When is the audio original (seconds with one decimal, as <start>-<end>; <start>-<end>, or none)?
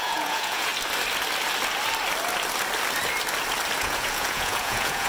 0.7-3.8